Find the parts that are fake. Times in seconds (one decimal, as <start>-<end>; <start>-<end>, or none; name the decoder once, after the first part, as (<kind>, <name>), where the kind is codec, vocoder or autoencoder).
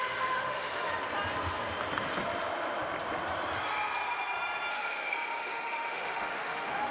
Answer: 0.0-0.9 (autoencoder, DAC-VAE); 4.7-6.9